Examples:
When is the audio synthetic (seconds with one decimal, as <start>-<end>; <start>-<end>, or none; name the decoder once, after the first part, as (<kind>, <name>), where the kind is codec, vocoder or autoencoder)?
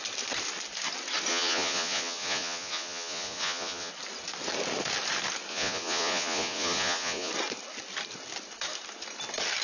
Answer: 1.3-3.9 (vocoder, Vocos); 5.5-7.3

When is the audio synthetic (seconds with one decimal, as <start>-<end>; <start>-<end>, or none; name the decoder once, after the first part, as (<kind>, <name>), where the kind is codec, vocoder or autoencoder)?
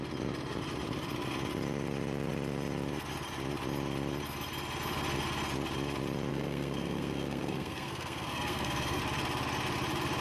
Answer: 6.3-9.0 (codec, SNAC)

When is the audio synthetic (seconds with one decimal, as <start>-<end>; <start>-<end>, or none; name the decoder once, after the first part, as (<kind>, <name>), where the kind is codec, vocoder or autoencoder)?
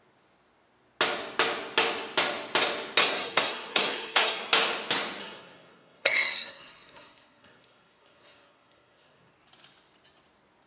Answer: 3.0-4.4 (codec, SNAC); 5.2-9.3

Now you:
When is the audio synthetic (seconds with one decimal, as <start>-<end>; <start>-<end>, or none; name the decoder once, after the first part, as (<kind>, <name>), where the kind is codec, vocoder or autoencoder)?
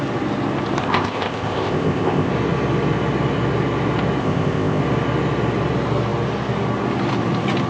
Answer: 0.8-2.3 (codec, ZipCodec); 4.2-4.8